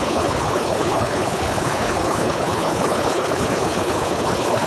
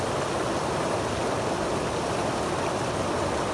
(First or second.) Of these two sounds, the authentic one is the second